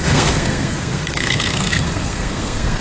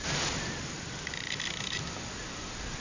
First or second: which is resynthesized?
first